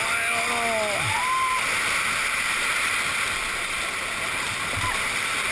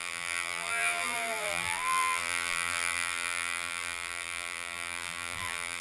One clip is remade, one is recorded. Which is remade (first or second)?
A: second